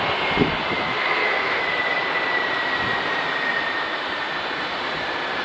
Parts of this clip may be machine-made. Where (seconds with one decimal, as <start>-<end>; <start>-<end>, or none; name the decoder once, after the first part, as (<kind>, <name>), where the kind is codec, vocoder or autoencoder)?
0.8-1.6 (codec, SNAC)